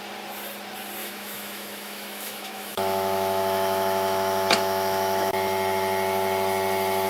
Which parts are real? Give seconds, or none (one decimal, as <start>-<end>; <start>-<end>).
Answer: 0.0-1.0; 5.3-7.1